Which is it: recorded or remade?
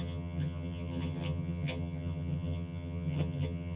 remade